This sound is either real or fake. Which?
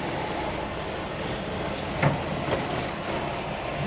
real